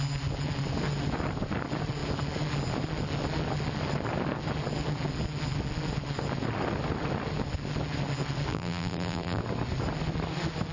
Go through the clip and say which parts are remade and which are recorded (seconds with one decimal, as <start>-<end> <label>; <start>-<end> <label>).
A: 0.0-8.5 recorded; 8.5-9.4 remade; 9.4-10.7 recorded